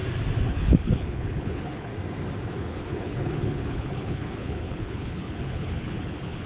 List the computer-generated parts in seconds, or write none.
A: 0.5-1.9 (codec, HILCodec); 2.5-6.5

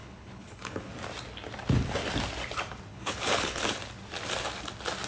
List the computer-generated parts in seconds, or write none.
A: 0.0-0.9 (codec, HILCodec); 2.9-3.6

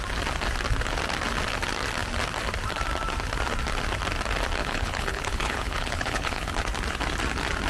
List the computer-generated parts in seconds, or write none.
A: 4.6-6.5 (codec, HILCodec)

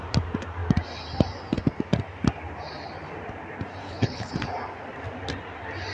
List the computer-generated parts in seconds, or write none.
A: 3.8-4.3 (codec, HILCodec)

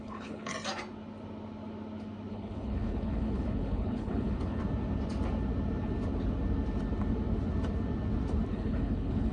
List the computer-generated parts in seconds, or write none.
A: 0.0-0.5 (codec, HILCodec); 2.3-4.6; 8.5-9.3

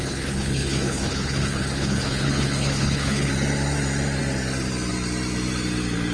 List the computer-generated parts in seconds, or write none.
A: 0.0-3.3 (codec, HILCodec)

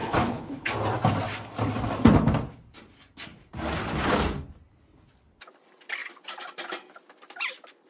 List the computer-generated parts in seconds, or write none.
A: 0.0-0.7 (codec, HILCodec)

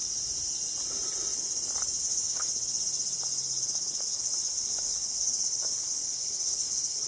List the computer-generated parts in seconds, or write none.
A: 2.0-2.5 (codec, HILCodec); 3.6-7.1